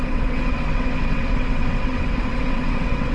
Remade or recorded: remade